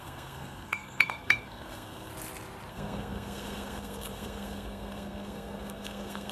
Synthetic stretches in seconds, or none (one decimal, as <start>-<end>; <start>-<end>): 0.0-2.1; 2.7-6.3